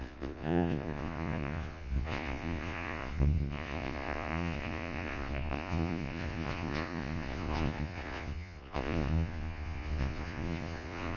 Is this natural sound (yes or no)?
no